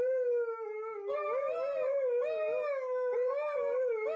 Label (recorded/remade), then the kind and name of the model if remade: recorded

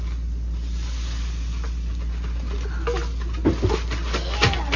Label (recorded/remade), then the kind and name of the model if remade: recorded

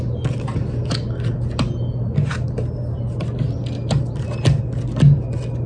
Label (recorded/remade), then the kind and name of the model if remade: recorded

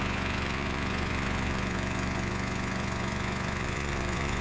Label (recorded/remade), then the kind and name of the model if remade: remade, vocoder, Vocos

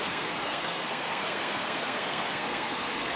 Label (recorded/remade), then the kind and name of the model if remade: remade, codec, SNAC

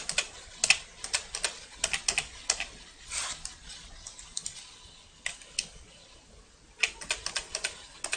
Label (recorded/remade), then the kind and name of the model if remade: recorded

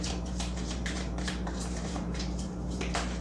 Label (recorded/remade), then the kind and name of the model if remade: remade, vocoder, BigVGAN v2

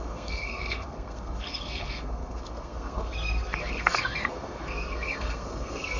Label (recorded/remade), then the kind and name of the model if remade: remade, codec, SNAC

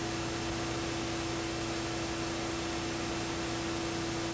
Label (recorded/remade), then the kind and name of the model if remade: recorded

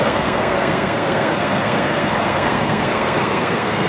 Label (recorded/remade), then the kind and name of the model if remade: remade, codec, SNAC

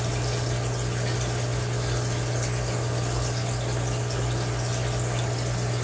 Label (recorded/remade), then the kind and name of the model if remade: recorded